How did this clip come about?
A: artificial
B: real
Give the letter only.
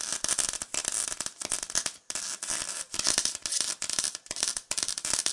B